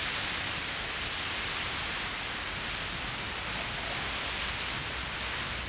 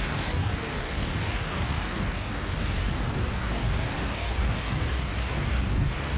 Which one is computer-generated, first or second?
second